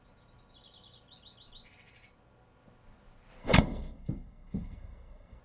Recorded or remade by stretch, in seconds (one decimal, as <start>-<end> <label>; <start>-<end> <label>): 0.0-3.4 recorded; 3.4-5.4 remade